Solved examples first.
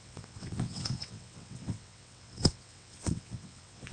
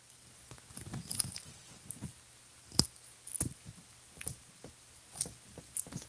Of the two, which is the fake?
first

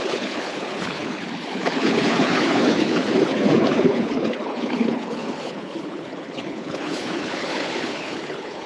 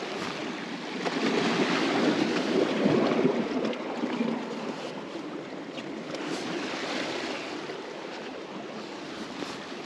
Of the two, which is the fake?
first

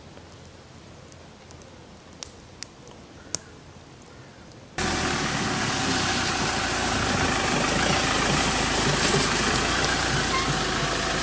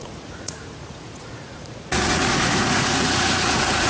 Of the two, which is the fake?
second